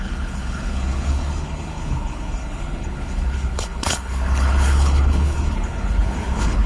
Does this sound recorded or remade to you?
remade